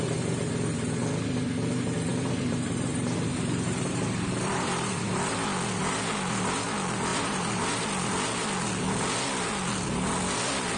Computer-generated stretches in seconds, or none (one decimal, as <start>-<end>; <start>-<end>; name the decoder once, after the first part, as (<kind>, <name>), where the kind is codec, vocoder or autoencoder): 2.1-5.3 (vocoder, BigVGAN v2); 7.1-7.8